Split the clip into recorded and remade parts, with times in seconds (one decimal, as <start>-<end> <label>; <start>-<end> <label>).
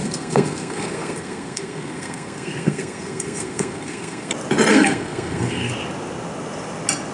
0.0-4.3 remade; 4.3-4.7 recorded; 4.7-5.7 remade; 5.7-7.1 recorded